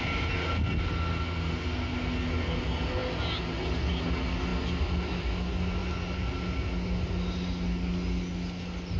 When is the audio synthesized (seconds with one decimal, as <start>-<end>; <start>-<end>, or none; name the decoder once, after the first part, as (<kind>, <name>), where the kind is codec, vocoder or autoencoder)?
none

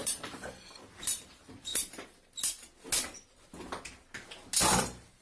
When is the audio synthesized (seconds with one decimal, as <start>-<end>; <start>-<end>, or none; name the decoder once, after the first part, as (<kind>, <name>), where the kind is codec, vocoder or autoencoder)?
0.0-1.7 (vocoder, BigVGAN v2); 4.8-5.2

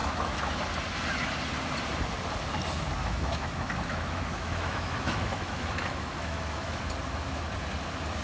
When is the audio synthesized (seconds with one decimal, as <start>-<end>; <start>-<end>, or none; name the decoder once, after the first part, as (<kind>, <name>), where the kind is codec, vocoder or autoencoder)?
0.0-0.6 (autoencoder, DAC-VAE); 3.0-6.8

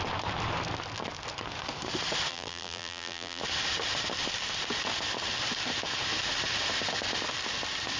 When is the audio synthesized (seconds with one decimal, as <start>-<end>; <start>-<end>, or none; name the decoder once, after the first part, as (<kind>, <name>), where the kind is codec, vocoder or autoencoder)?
2.3-3.4 (vocoder, BigVGAN v2)

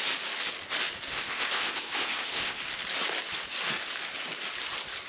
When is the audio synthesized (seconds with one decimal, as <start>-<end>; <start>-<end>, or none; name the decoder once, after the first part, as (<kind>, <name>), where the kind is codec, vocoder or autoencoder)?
1.1-2.6 (codec, ZipCodec)

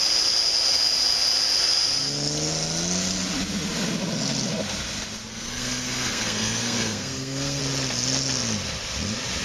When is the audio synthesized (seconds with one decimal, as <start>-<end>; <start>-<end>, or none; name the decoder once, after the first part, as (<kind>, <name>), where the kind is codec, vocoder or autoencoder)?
5.3-7.6 (codec, SNAC)

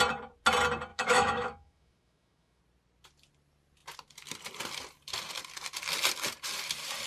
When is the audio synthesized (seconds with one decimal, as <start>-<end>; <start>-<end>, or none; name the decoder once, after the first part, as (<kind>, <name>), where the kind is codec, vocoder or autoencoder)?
0.9-2.6 (autoencoder, DAC-VAE)

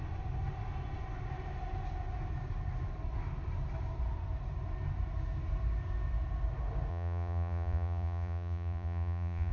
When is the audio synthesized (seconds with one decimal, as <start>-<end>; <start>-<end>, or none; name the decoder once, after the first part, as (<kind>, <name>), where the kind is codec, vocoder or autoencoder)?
6.9-9.5 (vocoder, Vocos)